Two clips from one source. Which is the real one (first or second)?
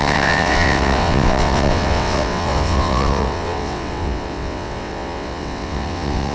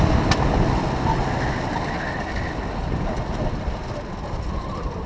second